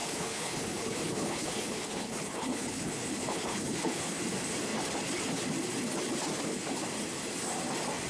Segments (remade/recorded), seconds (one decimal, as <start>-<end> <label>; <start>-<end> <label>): 0.0-4.2 remade; 4.2-8.1 recorded